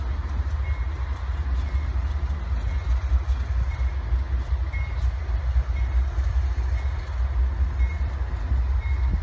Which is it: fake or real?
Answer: real